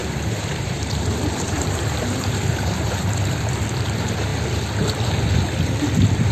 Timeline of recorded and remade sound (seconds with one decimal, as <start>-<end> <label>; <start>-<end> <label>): 0.0-3.5 remade; 3.5-6.3 recorded